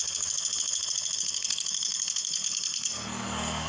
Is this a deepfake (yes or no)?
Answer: yes